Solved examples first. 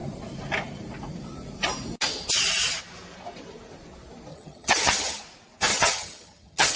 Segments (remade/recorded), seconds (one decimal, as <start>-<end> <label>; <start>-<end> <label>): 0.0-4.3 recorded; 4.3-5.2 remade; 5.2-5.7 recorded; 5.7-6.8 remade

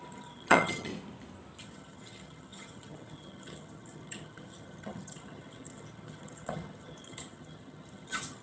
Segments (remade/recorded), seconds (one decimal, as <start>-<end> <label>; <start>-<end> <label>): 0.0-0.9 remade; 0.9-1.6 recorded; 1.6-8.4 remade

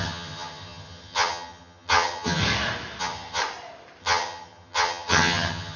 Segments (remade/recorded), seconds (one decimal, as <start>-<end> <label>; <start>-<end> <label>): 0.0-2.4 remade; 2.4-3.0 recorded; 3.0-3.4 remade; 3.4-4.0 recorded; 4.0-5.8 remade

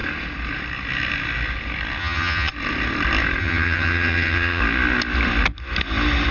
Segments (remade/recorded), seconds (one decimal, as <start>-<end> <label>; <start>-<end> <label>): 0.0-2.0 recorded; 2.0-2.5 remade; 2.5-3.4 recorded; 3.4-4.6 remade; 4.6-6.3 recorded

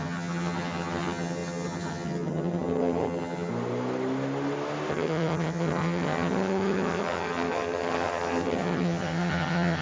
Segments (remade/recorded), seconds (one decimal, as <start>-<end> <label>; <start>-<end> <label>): 0.0-3.5 remade; 3.5-4.9 recorded; 4.9-9.8 remade

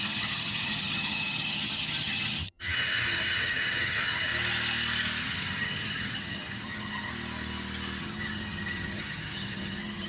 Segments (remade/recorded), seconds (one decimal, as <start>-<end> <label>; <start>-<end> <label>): 0.0-4.3 remade; 4.3-5.2 recorded; 5.2-7.1 remade; 7.1-8.0 recorded; 8.0-10.1 remade